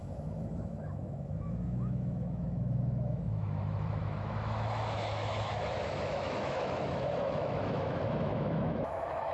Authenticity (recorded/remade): remade